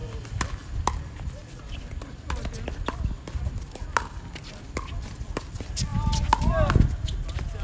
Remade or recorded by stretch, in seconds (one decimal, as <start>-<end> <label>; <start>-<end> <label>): 0.0-7.6 recorded